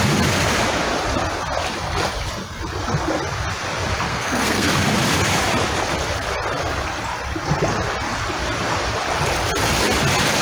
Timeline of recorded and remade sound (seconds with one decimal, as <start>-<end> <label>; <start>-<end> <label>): 0.0-4.1 recorded; 4.1-4.7 remade; 4.7-10.4 recorded